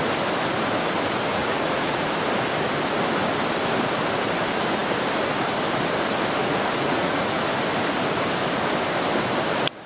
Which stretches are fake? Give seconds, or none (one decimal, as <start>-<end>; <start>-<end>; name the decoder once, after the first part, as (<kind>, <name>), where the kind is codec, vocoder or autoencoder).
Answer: 1.3-2.1 (vocoder, Vocos); 6.4-7.4